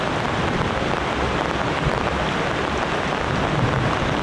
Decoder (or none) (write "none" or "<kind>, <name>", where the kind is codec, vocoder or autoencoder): none